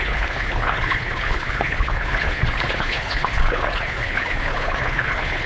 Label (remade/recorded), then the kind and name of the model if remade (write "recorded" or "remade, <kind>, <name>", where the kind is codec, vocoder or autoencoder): remade, codec, HILCodec